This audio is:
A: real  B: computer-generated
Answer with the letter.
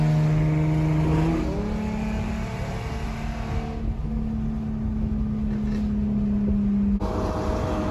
A